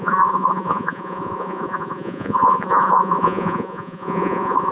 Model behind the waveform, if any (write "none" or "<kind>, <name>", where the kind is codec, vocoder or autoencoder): vocoder, Vocos